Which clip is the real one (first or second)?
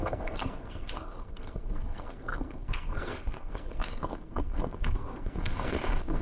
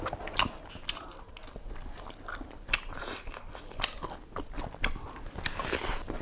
second